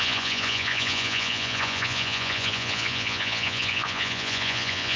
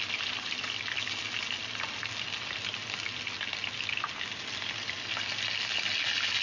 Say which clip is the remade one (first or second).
first